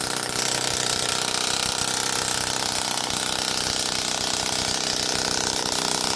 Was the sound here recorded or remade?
recorded